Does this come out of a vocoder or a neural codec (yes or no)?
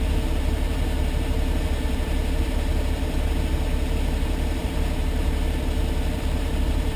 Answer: yes